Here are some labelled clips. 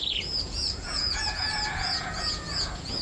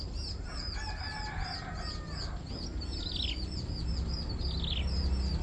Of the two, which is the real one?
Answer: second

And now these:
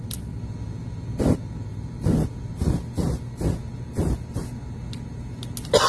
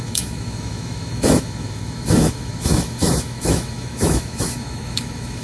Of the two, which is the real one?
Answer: first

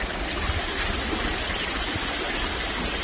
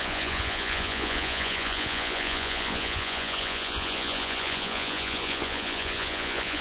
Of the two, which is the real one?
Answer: first